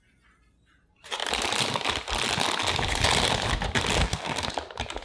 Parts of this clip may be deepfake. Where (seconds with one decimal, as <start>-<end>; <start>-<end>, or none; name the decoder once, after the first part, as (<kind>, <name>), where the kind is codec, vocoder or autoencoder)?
4.0-4.5 (codec, SNAC)